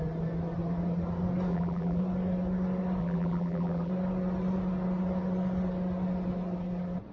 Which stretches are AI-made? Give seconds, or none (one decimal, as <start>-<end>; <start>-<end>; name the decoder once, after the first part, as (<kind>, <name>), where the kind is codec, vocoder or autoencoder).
1.5-2.0 (vocoder, BigVGAN v2); 3.0-3.9